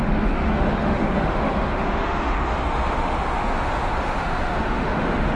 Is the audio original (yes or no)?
no